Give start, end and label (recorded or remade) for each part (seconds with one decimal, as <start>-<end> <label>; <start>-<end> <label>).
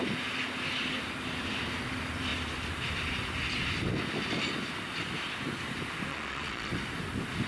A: 0.0-6.1 recorded; 6.1-6.7 remade; 6.7-7.5 recorded